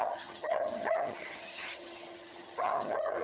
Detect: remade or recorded remade